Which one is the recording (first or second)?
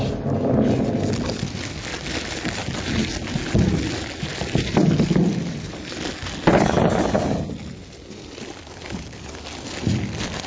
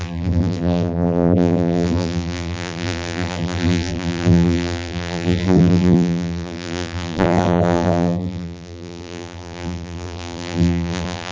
first